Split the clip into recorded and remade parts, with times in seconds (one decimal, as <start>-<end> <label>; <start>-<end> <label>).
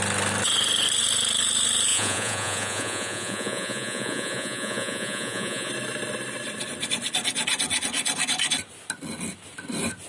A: 0.0-1.9 recorded; 1.9-5.7 remade; 5.7-10.1 recorded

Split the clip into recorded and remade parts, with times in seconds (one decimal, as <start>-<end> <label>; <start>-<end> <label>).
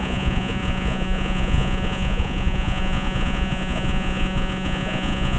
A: 0.0-5.4 remade